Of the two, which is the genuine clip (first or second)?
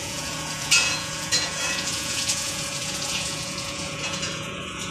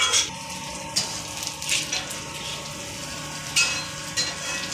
second